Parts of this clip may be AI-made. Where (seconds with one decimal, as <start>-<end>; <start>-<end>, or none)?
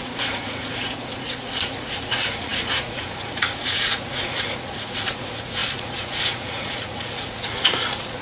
0.0-8.2